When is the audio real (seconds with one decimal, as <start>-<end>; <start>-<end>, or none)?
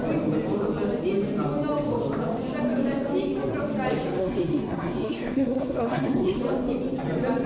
0.0-4.2; 6.4-7.5